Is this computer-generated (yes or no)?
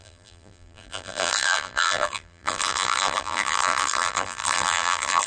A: yes